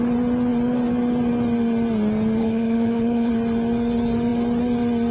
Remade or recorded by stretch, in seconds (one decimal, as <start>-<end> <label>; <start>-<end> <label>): 0.0-2.4 recorded; 2.4-3.3 remade; 3.3-5.1 recorded